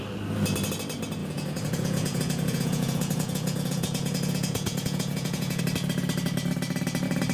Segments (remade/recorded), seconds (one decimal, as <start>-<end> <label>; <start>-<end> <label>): 0.0-1.2 recorded; 1.2-5.6 remade; 5.6-7.3 recorded

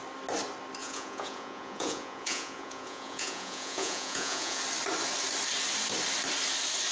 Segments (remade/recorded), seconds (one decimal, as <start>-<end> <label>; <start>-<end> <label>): 0.0-0.8 recorded; 0.8-4.6 remade; 4.6-6.9 recorded

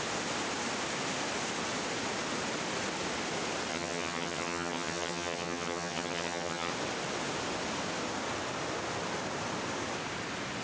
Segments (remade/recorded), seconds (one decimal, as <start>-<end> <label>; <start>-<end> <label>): 0.0-3.7 recorded; 3.7-6.7 remade; 6.7-10.6 recorded

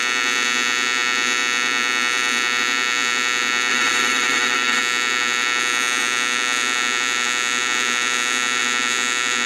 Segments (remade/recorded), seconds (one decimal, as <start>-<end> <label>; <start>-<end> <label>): 0.0-3.7 recorded; 3.7-4.8 remade; 4.8-9.5 recorded

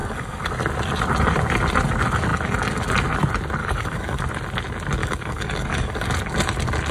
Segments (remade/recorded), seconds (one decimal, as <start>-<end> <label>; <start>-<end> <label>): 0.0-0.5 remade; 0.5-3.6 recorded; 3.6-4.2 remade; 4.2-5.0 recorded; 5.0-6.1 remade; 6.1-6.9 recorded

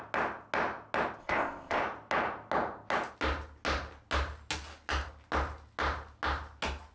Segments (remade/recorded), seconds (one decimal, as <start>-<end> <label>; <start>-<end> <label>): 0.0-1.2 recorded; 1.2-1.8 remade; 1.8-6.9 recorded

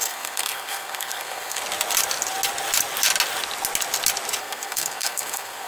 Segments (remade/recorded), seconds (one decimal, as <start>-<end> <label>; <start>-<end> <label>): 0.0-1.6 remade; 1.6-4.4 recorded; 4.4-5.7 remade